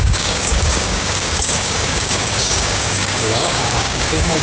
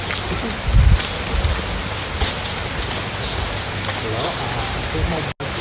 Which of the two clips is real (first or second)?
second